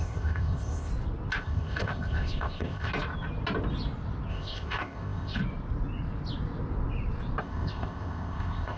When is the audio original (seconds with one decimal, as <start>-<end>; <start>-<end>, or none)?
0.9-1.4; 2.9-4.3; 5.4-7.4